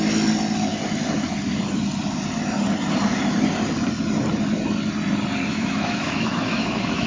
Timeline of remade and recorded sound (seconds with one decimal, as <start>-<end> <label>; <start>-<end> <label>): 0.0-5.5 recorded; 5.5-7.1 remade